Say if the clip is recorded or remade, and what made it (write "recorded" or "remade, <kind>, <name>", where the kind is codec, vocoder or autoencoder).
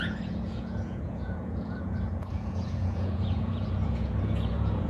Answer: remade, vocoder, Vocos